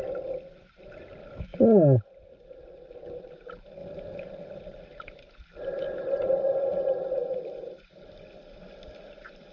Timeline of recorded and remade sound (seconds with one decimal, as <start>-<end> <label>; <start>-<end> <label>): 0.0-3.8 recorded; 3.8-6.3 remade; 6.3-7.2 recorded; 7.2-7.8 remade; 7.8-9.5 recorded